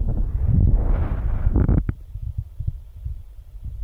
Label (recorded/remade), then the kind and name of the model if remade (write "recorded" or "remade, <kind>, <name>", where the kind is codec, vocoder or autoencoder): recorded